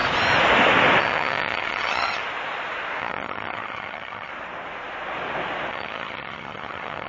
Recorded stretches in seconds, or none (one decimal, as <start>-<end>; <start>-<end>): 0.0-1.0; 2.2-3.0; 4.3-5.7